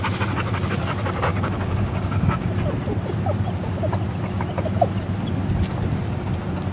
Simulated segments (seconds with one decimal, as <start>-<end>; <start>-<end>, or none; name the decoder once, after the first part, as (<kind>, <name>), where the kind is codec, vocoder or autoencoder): 1.3-2.5 (codec, DAC)